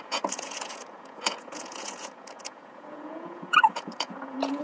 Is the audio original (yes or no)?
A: no